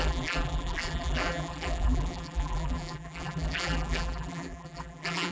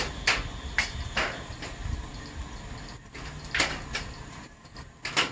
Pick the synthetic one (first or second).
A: first